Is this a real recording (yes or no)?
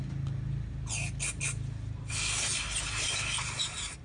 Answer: yes